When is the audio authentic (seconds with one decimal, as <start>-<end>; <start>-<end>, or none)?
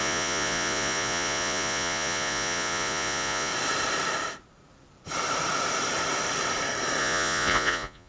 3.5-7.0